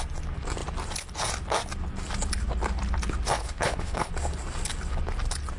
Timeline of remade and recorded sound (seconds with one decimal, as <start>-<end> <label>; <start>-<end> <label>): 0.0-3.4 recorded; 3.4-4.1 remade; 4.1-5.6 recorded